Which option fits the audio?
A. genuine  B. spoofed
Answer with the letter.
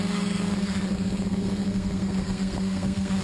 B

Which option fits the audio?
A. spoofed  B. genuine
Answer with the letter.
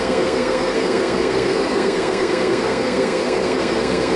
A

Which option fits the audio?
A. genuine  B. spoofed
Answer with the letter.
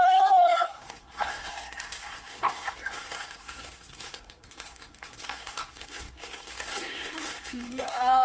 B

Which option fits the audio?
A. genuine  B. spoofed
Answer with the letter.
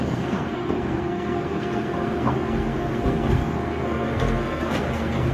B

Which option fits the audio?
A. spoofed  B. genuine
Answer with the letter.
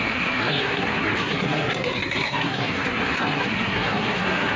A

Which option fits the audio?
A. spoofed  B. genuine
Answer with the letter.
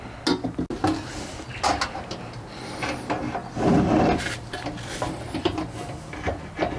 B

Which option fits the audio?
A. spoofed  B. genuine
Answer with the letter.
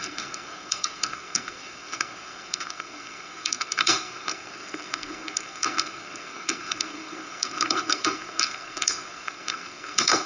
A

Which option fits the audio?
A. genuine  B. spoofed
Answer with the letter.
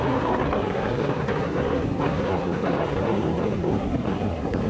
B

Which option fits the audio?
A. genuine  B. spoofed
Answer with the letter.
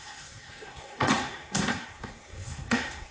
B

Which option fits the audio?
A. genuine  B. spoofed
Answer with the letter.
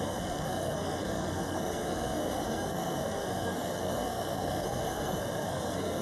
B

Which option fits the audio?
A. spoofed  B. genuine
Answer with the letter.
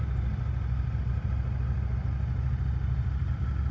B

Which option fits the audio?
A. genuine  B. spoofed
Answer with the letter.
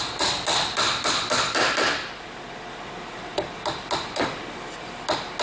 A